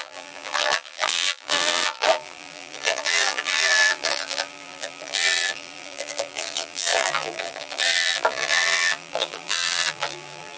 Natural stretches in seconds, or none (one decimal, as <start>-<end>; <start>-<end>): none